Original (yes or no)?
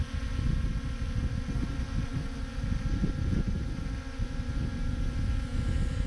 yes